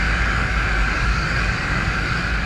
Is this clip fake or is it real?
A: fake